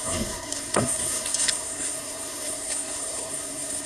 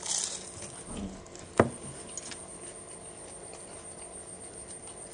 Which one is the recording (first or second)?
second